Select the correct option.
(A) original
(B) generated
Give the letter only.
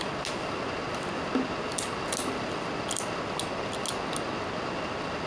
A